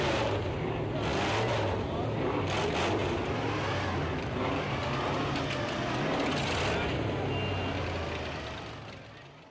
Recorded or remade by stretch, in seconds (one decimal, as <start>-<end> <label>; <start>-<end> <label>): 0.0-9.5 recorded